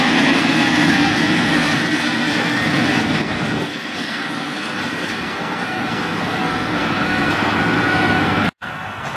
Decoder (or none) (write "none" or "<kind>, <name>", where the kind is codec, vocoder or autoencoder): codec, SNAC